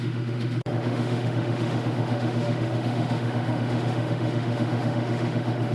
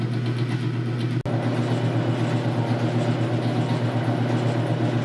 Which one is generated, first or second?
first